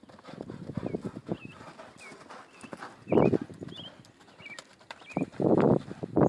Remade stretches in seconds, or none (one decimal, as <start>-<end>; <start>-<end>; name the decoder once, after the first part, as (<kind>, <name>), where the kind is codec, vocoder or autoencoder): none